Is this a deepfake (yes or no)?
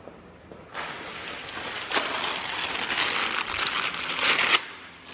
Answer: no